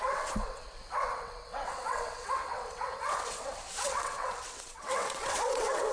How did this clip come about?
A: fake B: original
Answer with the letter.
A